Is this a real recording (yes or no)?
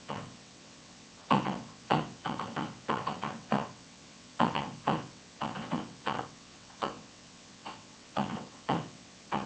no